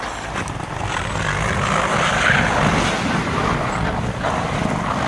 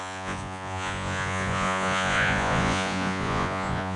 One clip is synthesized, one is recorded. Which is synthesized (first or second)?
second